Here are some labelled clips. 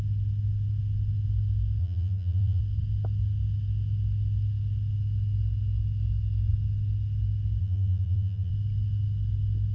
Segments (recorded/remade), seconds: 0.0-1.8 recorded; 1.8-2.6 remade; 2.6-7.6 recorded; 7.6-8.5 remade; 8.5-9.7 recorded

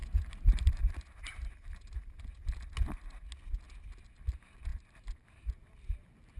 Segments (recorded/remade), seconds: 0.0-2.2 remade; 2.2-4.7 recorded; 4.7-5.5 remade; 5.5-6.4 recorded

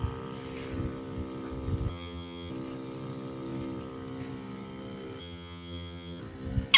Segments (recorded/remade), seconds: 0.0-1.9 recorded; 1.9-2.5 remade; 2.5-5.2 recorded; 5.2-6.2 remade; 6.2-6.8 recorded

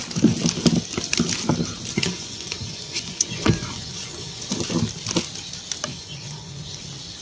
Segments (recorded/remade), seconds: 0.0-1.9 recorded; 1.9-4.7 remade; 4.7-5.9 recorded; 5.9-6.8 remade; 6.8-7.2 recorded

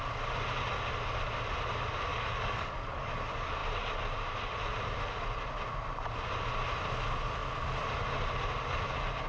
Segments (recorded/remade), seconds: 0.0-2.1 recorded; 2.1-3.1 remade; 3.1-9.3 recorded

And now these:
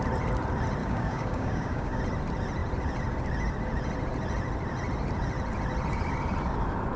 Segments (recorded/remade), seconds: 0.0-0.8 recorded; 0.8-2.0 remade; 2.0-7.0 recorded